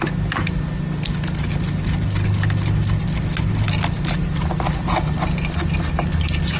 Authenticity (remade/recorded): recorded